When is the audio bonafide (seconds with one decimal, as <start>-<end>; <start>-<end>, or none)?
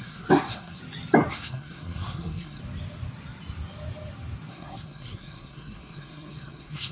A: 0.8-1.3; 2.6-4.5